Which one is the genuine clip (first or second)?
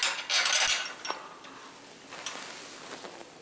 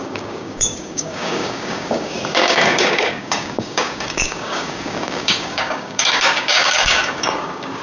first